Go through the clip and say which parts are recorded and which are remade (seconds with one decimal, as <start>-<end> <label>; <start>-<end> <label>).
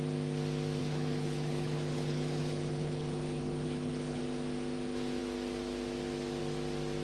0.0-0.8 recorded; 0.8-4.2 remade; 4.2-7.0 recorded